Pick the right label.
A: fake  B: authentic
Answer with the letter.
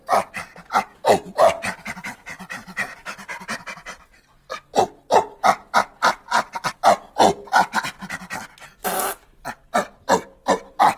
B